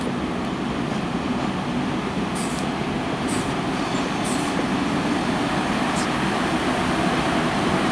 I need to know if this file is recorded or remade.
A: recorded